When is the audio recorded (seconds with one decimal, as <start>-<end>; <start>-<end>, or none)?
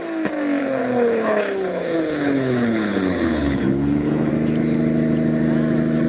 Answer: 0.0-0.6; 4.3-6.1